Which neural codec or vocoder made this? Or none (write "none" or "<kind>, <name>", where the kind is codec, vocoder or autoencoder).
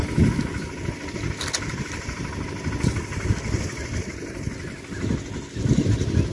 none